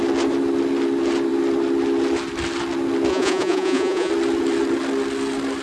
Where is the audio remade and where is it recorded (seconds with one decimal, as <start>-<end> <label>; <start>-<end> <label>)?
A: 0.0-3.1 recorded; 3.1-4.1 remade; 4.1-5.6 recorded